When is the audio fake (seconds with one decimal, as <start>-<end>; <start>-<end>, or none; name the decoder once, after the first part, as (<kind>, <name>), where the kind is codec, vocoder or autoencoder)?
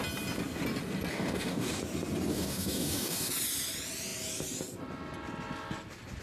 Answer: 1.1-1.8 (codec, DAC); 2.3-3.3